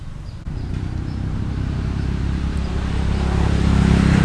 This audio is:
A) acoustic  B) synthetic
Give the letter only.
B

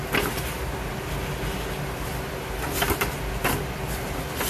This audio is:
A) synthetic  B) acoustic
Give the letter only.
B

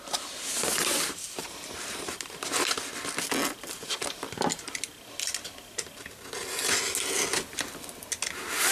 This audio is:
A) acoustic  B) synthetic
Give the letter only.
A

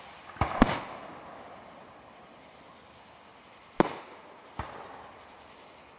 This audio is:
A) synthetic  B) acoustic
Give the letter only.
B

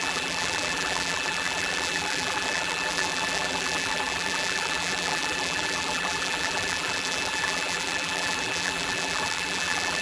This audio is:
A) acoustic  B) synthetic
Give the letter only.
B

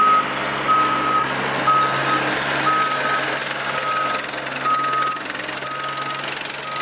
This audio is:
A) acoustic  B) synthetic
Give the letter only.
A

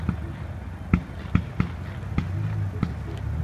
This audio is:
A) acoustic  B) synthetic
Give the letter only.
A